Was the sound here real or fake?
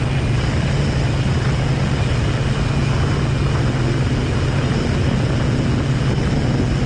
real